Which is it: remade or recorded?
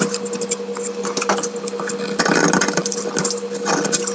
recorded